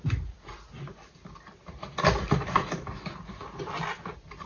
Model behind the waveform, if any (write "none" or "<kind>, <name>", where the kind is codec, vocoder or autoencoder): none